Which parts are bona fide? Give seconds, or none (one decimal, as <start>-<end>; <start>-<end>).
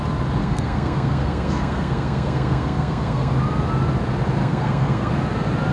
0.0-0.4; 3.3-4.4; 5.1-5.7